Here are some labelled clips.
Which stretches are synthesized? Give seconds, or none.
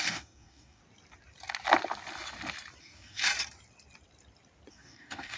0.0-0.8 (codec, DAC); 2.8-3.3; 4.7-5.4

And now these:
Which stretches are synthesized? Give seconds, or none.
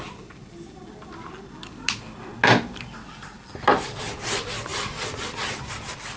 none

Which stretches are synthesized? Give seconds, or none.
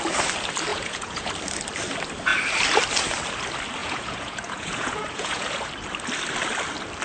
0.7-1.3 (vocoder, Vocos); 3.8-5.7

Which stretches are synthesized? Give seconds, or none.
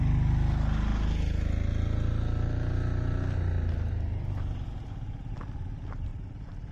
6.1-6.7 (vocoder, BigVGAN v2)